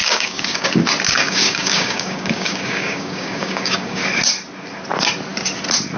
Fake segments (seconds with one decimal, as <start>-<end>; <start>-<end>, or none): 0.0-0.7; 1.2-4.0